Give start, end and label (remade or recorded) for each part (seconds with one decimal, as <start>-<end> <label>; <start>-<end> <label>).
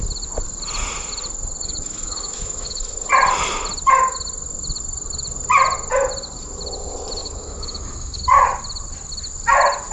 0.0-1.6 recorded; 1.6-3.1 remade; 3.1-7.2 recorded; 7.2-8.2 remade; 8.2-9.9 recorded